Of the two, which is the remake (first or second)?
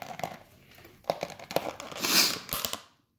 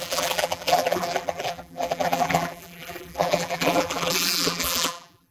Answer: second